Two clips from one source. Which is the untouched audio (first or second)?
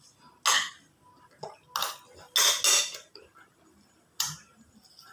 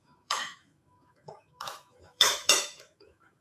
first